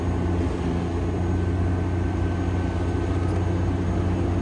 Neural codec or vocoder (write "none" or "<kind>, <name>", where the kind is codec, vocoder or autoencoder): none